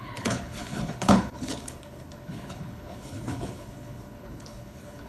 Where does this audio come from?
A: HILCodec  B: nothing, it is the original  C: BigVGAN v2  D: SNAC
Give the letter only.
A